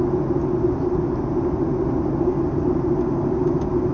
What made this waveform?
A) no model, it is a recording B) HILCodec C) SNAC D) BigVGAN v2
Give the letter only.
A